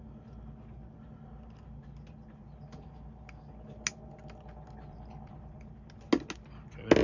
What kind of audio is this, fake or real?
real